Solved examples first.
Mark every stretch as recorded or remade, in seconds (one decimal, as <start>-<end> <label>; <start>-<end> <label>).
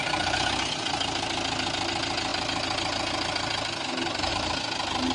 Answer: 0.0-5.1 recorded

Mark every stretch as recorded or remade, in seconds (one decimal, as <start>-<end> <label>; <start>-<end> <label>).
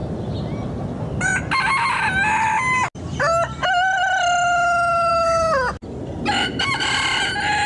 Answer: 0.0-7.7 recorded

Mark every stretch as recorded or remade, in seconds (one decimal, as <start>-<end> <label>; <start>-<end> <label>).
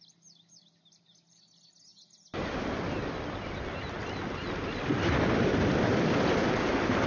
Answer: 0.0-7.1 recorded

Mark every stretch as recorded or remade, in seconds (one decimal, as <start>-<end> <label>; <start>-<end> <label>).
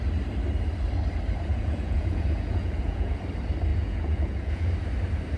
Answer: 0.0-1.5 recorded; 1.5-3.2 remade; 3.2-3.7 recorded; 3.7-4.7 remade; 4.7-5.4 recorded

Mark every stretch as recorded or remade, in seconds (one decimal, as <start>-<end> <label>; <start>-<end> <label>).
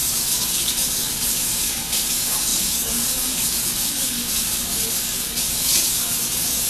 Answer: 0.0-6.7 remade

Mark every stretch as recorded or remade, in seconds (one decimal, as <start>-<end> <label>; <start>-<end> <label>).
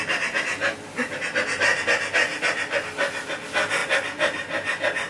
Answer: 0.0-5.1 recorded